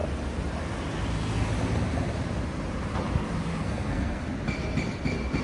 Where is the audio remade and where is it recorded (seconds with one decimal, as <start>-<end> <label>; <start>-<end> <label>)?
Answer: 0.0-3.6 recorded; 3.6-4.3 remade; 4.3-5.4 recorded